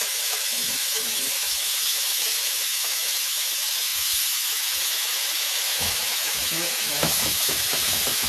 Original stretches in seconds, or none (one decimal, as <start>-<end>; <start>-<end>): none